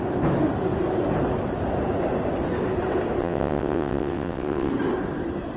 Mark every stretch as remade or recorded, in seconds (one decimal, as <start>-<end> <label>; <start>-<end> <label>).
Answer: 0.0-3.2 recorded; 3.2-4.7 remade; 4.7-5.6 recorded